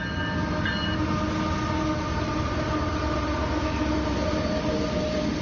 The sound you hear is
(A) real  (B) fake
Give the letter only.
A